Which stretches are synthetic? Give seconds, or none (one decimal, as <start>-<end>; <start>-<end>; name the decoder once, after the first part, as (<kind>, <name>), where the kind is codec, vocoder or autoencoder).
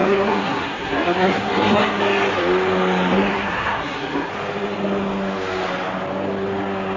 0.0-2.0 (codec, SNAC); 3.3-4.3